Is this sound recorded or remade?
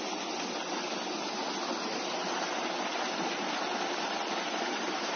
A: recorded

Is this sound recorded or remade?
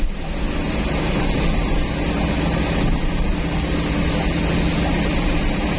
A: recorded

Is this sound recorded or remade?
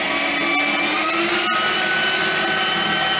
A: recorded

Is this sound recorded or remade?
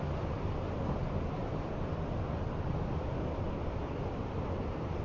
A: recorded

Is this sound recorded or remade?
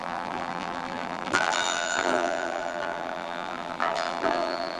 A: remade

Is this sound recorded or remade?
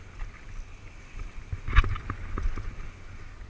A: recorded